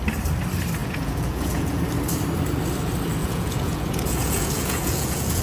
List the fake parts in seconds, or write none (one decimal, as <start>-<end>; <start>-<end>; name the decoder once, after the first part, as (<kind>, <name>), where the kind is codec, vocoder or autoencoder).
0.8-1.8 (vocoder, Vocos); 3.2-5.4